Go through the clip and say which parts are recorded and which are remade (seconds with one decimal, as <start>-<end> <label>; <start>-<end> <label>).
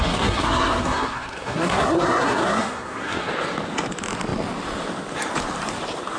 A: 0.0-3.3 remade; 3.3-6.2 recorded